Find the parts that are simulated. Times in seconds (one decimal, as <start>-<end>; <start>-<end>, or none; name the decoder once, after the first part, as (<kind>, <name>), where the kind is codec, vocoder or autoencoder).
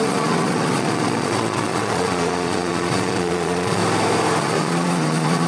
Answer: 0.0-3.8 (vocoder, Vocos); 4.4-5.5